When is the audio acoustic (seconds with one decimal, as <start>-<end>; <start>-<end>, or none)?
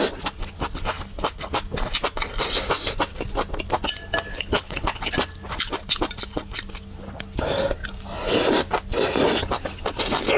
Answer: 0.0-4.3; 5.1-10.4